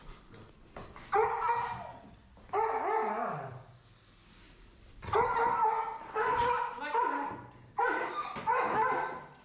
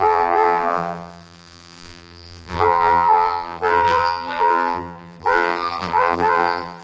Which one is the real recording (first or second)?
first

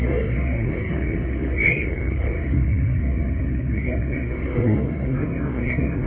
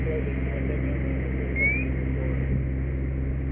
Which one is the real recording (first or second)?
second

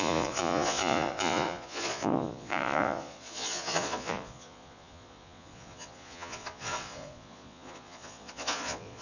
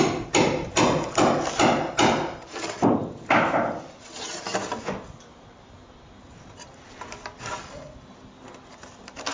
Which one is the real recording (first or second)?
second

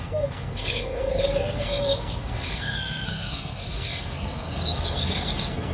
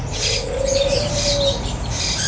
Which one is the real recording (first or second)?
second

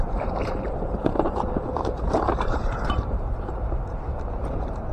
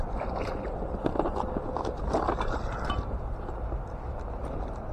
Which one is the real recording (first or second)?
second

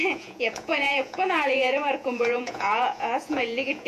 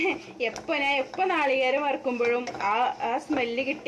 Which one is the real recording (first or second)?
second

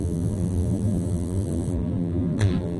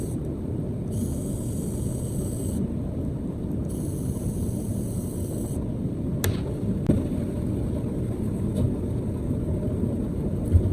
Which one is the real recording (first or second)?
second